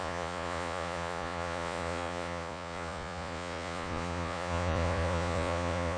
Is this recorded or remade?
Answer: remade